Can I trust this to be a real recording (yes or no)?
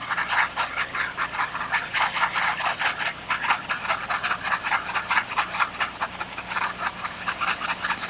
yes